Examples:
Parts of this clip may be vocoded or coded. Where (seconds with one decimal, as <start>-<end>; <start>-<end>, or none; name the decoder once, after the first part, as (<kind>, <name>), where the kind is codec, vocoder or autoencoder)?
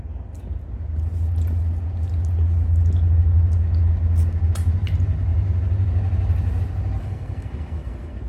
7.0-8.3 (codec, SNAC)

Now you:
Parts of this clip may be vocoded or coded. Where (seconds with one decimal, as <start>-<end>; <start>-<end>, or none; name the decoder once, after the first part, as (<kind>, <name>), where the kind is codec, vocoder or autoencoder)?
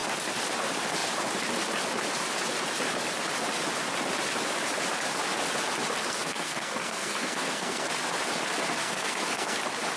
6.0-7.9 (codec, SNAC); 8.8-9.6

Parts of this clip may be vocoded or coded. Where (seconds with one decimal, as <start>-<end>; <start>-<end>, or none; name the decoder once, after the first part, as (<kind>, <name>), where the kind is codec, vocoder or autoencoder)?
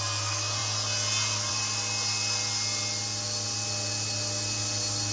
none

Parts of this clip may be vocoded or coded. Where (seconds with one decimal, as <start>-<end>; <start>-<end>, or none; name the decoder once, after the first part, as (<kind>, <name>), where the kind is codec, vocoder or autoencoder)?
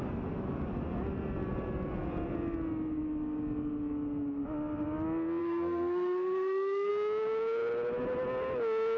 5.4-6.9 (codec, SNAC)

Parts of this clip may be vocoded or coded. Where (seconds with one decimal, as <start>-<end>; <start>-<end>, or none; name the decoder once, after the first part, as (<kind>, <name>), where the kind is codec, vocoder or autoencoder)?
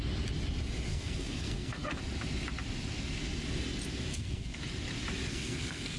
0.9-2.0 (codec, SNAC); 4.1-4.6; 5.3-6.0